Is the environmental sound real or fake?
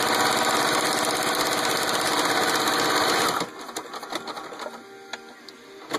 real